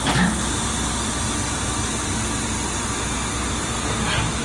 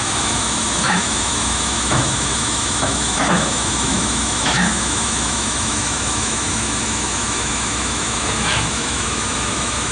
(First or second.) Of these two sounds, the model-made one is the second